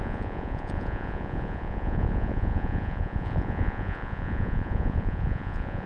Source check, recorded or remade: remade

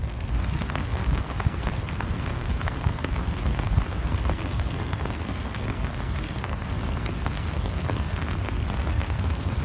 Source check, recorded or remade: remade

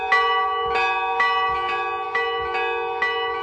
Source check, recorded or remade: recorded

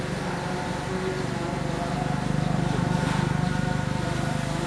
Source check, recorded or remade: recorded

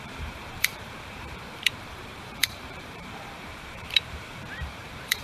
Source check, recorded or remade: remade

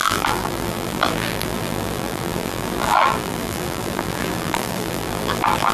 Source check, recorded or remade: remade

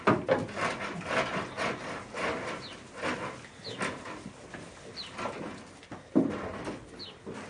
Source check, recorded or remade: recorded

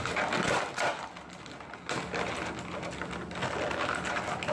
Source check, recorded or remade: recorded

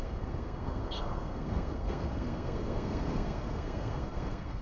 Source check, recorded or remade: remade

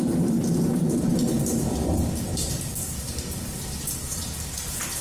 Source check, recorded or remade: remade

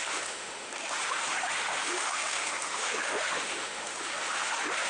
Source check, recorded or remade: remade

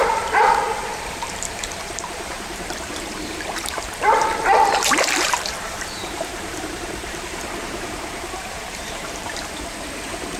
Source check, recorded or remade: remade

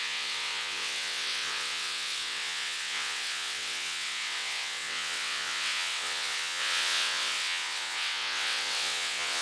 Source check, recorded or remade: remade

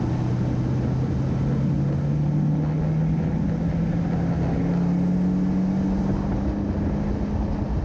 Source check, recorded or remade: recorded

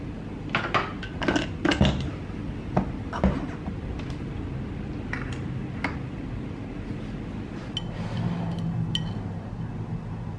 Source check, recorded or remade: recorded